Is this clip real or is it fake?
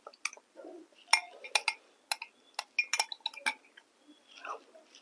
real